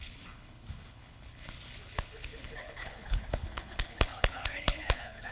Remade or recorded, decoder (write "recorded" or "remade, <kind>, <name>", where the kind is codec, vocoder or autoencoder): remade, codec, HILCodec